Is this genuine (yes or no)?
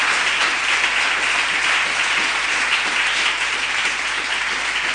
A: no